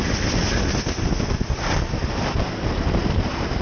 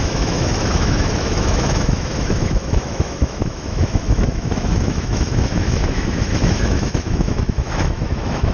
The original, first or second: first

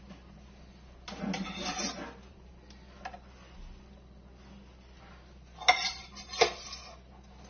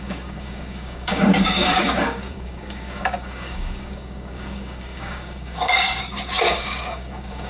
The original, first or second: first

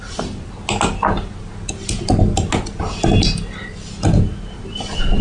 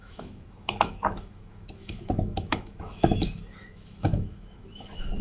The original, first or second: first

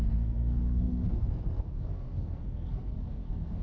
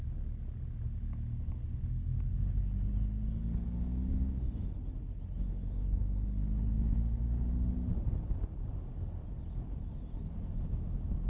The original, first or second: second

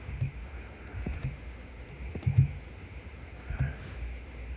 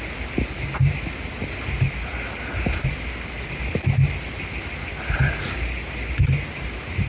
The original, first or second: second